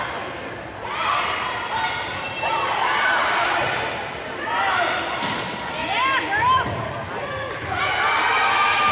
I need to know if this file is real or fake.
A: real